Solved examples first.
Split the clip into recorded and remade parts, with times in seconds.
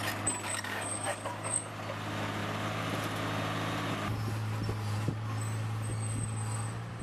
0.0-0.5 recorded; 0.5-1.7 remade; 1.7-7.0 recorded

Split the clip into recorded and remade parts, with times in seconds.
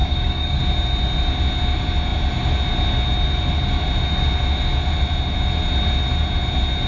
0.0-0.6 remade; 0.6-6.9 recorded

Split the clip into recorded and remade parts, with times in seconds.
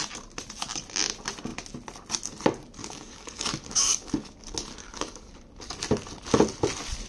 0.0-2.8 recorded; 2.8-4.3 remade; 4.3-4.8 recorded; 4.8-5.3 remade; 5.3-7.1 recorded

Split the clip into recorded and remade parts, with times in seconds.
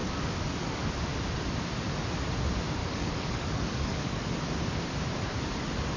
0.0-0.9 remade; 0.9-2.8 recorded; 2.8-4.3 remade; 4.3-6.0 recorded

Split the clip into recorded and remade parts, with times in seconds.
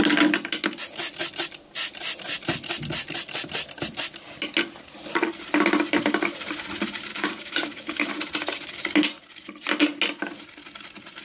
0.0-7.1 recorded; 7.1-8.1 remade; 8.1-11.2 recorded